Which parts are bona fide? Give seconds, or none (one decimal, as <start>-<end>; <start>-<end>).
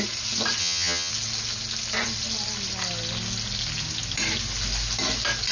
0.0-0.6; 1.1-5.5